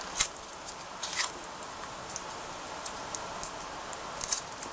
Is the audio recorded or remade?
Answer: recorded